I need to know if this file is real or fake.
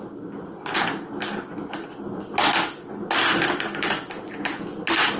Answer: real